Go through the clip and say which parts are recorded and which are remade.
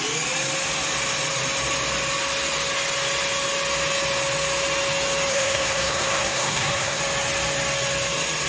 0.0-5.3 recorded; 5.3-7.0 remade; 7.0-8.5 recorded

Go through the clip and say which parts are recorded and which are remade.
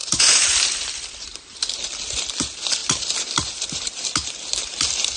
0.0-1.6 remade; 1.6-2.8 recorded; 2.8-4.0 remade; 4.0-5.2 recorded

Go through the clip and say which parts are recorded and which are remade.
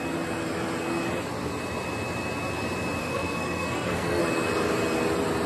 0.0-3.0 recorded; 3.0-4.2 remade; 4.2-5.5 recorded